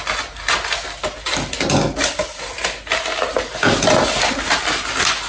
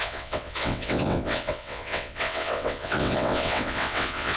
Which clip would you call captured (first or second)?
first